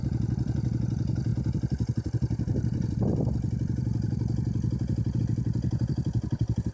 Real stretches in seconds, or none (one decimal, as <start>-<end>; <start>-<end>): none